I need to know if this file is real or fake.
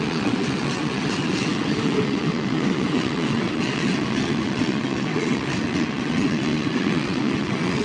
fake